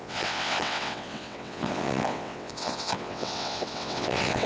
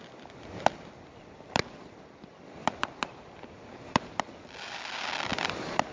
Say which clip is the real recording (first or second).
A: second